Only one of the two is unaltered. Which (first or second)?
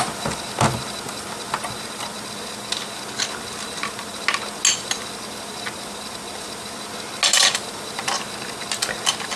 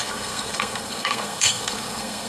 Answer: first